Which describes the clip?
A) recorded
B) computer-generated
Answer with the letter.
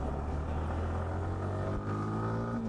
A